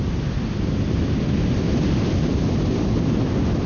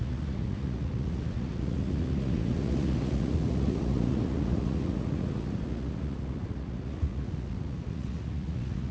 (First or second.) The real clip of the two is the first